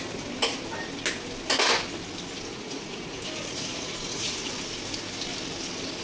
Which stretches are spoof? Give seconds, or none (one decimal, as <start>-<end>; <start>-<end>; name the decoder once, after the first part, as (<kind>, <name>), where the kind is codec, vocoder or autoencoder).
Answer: 2.5-3.2 (vocoder, Vocos); 3.7-4.6